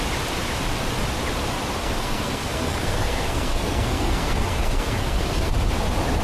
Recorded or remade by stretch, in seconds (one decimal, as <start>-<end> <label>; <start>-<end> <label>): 0.0-1.8 recorded; 1.8-5.5 remade; 5.5-6.2 recorded